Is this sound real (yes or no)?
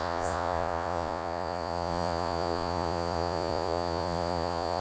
no